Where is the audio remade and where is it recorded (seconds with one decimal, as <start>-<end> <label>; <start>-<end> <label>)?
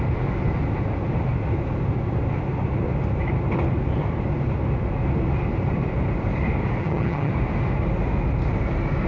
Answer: 0.0-6.8 recorded; 6.8-7.3 remade; 7.3-9.1 recorded